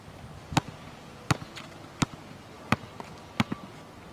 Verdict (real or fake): real